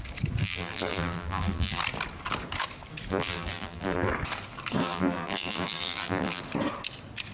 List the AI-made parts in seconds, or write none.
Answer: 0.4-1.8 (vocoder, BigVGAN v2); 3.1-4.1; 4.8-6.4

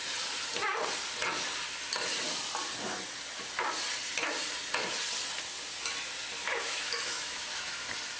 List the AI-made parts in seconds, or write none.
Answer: 6.4-7.7 (autoencoder, DAC-VAE)

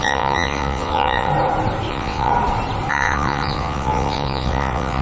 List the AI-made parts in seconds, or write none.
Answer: 0.0-1.3 (vocoder, WaveNeXt); 1.9-2.3; 2.9-5.0

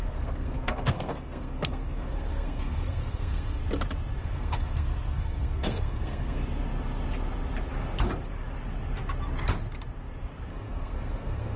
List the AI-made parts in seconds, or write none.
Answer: 0.0-3.6 (codec, SNAC); 4.2-6.4; 10.5-11.6

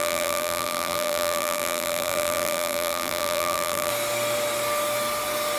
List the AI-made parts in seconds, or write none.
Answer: 0.0-3.9 (vocoder, BigVGAN v2)